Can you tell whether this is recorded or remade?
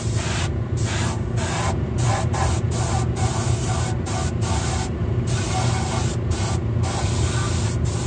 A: recorded